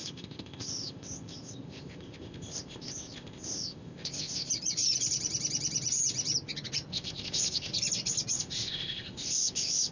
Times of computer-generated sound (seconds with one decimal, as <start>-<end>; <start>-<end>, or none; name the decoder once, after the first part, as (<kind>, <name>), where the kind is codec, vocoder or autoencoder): 0.0-4.5 (codec, ZipCodec); 6.9-7.7; 8.4-9.9

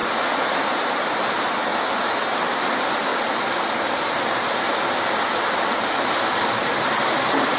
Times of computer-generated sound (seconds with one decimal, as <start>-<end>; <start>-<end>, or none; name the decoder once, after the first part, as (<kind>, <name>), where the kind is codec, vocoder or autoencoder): 0.6-1.7 (vocoder, BigVGAN v2); 2.7-3.1; 6.1-7.6

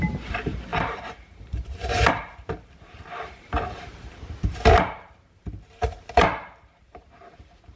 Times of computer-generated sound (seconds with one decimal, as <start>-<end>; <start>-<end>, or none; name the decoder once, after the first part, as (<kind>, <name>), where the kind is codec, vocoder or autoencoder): 0.0-7.8 (vocoder, BigVGAN v2)

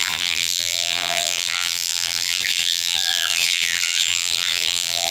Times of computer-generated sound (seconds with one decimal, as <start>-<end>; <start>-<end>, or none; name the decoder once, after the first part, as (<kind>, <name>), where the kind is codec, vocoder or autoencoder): 0.0-5.1 (vocoder, BigVGAN v2)